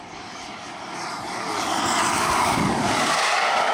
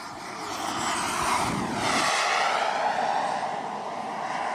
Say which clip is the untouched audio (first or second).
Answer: second